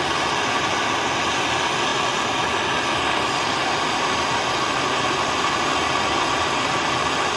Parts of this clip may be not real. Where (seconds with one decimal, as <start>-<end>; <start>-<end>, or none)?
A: none